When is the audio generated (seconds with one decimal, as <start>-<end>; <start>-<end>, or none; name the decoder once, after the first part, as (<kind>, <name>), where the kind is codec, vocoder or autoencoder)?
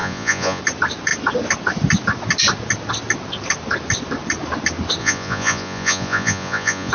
0.0-0.6 (vocoder, Vocos); 5.0-6.9